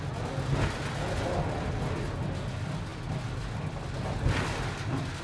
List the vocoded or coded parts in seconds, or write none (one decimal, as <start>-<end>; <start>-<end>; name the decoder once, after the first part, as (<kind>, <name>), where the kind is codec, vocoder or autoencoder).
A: none